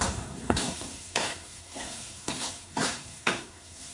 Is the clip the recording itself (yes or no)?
no